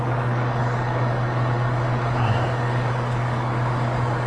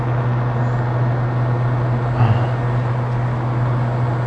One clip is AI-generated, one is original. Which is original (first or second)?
second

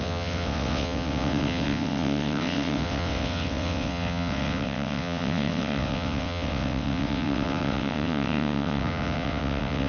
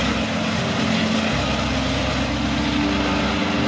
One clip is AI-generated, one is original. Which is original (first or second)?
second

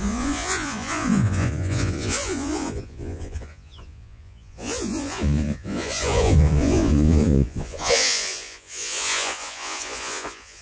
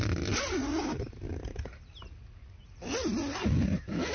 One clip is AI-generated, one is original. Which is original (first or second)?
second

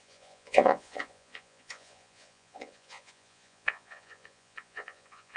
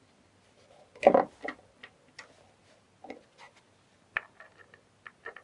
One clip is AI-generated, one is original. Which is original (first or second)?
second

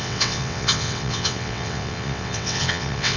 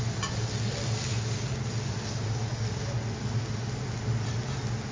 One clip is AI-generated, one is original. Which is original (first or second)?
second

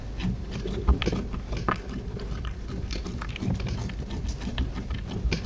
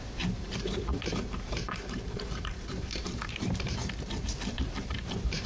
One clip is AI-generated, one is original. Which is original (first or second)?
first